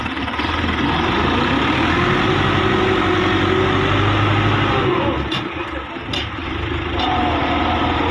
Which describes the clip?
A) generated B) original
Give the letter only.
B